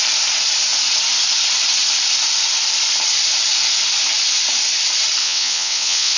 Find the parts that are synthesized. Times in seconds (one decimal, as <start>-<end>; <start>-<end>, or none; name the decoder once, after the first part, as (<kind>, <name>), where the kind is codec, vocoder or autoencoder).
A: 5.2-6.2 (vocoder, WaveNeXt)